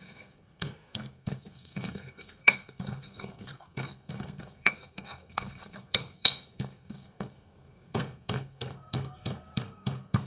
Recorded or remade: remade